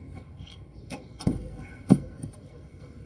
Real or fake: fake